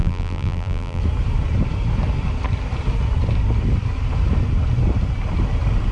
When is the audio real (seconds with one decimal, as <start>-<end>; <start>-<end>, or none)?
1.0-5.9